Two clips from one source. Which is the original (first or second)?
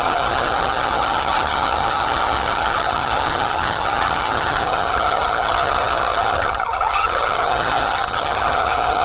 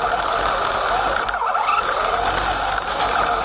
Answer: second